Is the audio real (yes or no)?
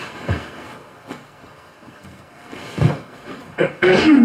no